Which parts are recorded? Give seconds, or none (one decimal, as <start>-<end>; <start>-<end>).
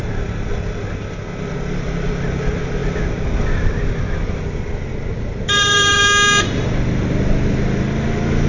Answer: 0.0-4.9; 6.0-8.5